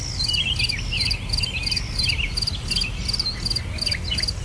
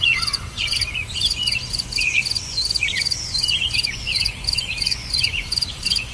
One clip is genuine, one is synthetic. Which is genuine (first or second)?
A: first